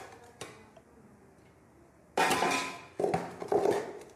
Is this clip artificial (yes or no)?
no